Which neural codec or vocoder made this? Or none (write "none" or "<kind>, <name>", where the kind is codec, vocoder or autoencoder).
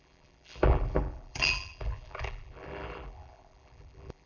vocoder, BigVGAN v2